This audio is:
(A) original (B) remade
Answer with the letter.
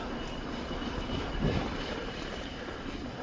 B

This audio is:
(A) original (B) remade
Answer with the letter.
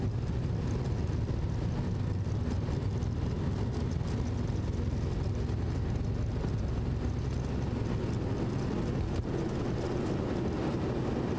A